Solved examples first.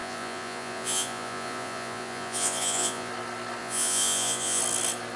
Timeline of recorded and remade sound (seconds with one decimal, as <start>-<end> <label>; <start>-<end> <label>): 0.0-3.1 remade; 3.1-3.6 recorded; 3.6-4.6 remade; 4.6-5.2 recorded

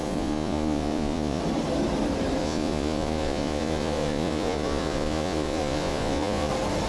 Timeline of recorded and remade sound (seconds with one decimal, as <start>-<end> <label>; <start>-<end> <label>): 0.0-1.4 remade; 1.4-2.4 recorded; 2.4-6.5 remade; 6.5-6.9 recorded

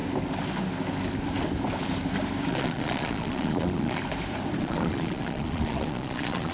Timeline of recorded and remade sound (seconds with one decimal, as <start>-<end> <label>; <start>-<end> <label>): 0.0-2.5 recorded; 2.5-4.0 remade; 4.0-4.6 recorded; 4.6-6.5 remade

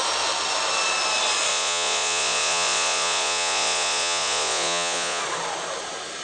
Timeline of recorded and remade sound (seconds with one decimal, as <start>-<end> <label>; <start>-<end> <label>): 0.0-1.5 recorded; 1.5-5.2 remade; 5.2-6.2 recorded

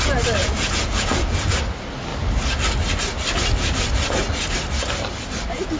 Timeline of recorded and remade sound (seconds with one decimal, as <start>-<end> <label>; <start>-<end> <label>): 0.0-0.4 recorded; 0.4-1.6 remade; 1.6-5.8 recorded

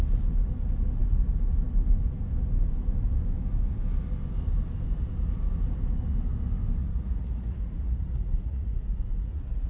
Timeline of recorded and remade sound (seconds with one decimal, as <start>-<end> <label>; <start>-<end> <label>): 0.0-6.8 recorded; 6.8-9.7 remade

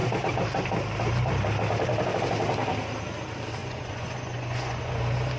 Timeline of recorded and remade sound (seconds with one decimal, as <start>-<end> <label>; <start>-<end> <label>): 0.0-3.6 recorded; 3.6-5.0 remade; 5.0-5.4 recorded

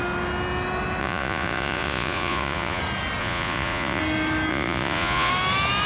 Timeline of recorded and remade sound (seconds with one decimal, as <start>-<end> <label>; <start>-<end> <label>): 0.0-1.0 recorded; 1.0-2.8 remade; 2.8-3.2 recorded; 3.2-4.0 remade; 4.0-4.5 recorded; 4.5-5.3 remade; 5.3-5.9 recorded